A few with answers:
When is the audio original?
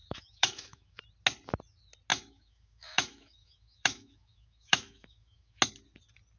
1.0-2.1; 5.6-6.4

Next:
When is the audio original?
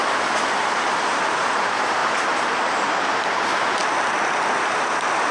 3.8-4.6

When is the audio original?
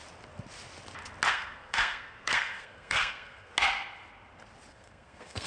0.0-1.3; 3.5-4.7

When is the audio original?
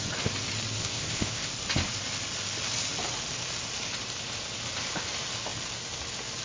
0.0-0.8; 1.5-6.4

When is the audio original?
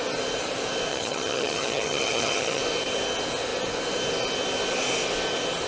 0.0-0.9; 2.6-5.7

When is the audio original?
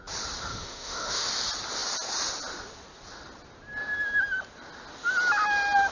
0.0-0.5; 1.3-5.9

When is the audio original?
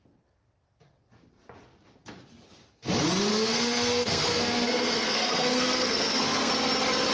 0.0-3.3; 6.5-7.1